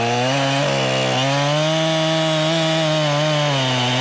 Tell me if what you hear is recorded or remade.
recorded